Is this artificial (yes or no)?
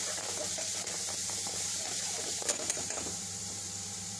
yes